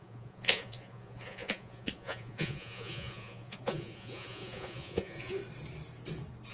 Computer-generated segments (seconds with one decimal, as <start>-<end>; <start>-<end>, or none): 0.0-5.4